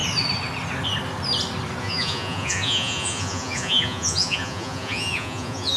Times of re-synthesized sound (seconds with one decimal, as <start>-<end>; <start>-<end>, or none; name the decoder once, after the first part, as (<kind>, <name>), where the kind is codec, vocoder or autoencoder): 1.8-5.8 (vocoder, Vocos)